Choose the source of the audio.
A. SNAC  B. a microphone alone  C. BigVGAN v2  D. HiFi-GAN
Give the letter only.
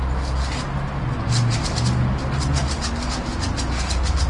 B